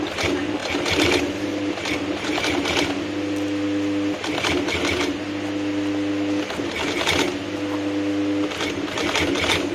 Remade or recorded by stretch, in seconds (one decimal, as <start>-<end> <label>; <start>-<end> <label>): 0.0-0.6 recorded; 0.6-2.7 remade; 2.7-9.7 recorded